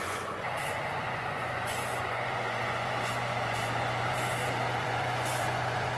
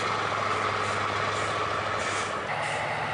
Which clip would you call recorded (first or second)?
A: second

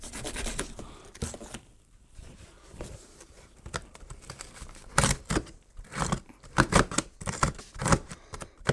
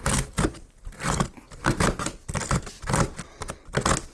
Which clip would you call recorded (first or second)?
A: second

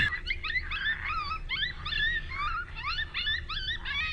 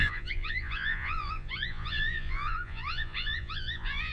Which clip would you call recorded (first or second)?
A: first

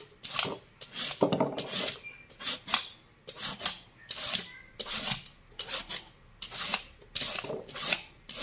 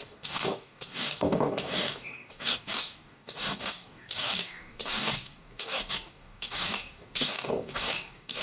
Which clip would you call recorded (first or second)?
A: first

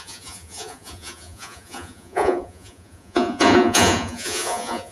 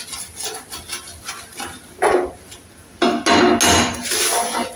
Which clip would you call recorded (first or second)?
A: second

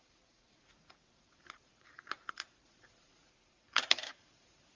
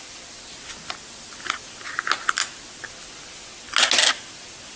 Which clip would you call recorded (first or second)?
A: second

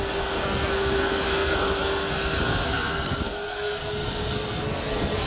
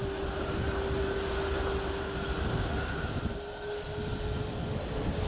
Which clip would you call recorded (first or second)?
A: second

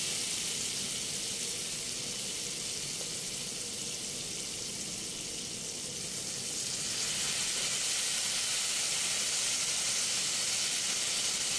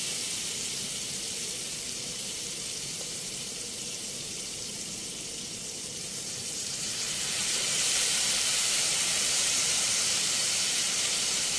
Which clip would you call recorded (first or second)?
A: first